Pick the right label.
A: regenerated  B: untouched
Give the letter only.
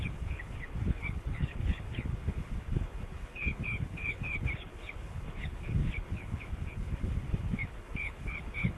A